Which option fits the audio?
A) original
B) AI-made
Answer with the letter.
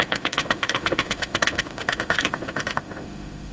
B